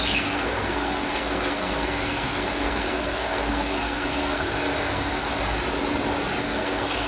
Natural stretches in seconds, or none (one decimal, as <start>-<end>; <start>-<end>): 5.3-6.4